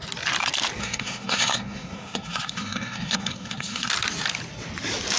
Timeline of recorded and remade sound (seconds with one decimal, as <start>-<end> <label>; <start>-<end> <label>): 0.0-0.8 recorded; 0.8-3.9 remade; 3.9-5.2 recorded